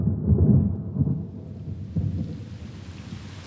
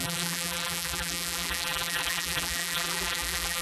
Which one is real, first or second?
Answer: first